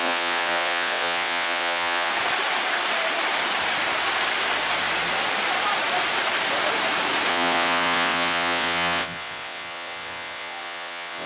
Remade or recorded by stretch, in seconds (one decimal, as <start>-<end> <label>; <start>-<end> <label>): 0.0-2.1 remade; 2.1-7.3 recorded; 7.3-11.3 remade